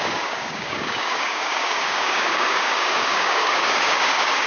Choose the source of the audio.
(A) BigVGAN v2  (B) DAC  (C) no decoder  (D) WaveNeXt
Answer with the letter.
B